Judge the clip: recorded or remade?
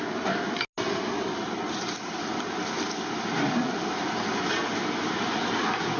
recorded